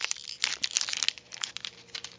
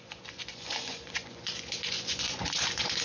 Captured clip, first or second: first